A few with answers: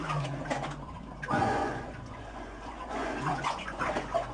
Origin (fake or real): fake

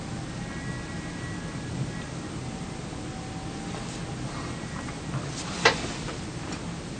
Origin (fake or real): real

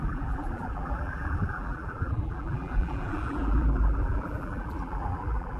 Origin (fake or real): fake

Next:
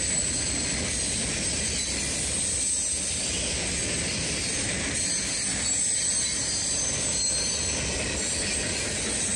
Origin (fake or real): real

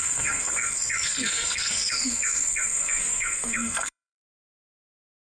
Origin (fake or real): fake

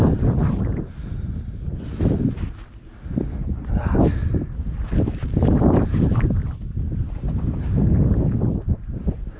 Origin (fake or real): real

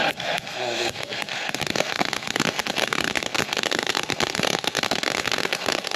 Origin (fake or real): fake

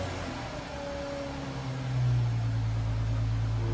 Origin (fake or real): real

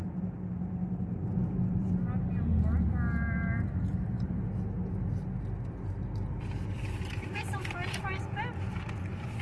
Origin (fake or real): real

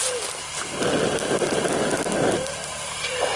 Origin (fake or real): real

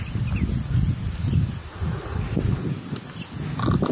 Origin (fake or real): real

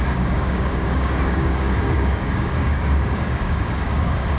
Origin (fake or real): fake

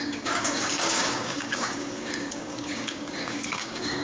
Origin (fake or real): fake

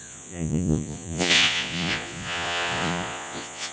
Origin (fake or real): fake